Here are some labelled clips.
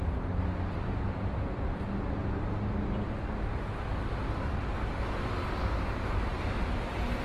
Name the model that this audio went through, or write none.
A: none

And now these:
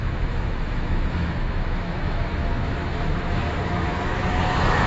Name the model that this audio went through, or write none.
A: autoencoder, DAC-VAE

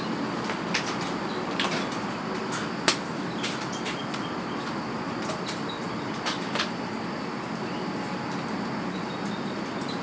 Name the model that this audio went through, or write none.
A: none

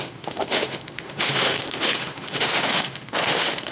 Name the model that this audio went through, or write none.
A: autoencoder, DAC-VAE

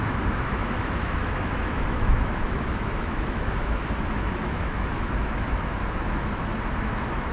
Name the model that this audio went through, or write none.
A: autoencoder, DAC-VAE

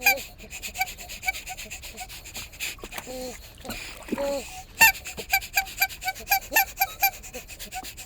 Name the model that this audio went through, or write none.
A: none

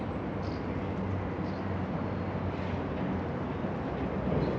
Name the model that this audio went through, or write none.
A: none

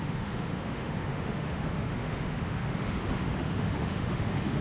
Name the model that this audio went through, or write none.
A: autoencoder, DAC-VAE